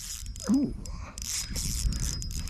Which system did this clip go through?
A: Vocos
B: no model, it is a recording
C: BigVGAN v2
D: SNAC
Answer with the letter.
C